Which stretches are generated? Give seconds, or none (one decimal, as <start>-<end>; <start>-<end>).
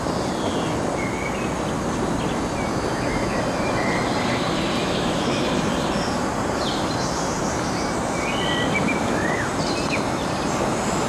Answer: 4.8-5.4